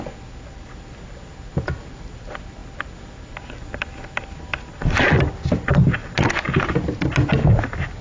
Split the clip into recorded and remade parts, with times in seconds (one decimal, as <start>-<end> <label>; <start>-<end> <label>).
0.0-8.0 recorded